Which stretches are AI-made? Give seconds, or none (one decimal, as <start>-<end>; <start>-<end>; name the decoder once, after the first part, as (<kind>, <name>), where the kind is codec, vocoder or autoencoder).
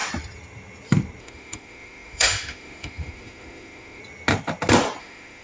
1.2-4.0 (autoencoder, DAC-VAE); 5.0-5.4